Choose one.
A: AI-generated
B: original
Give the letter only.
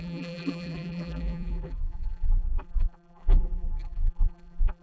A